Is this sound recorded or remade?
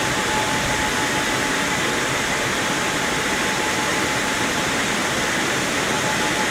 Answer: remade